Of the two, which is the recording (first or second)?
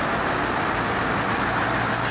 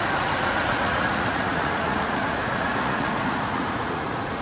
first